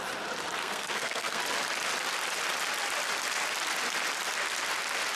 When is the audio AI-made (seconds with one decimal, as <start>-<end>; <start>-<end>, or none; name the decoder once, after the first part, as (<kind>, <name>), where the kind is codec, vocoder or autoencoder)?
0.6-1.4 (codec, SNAC)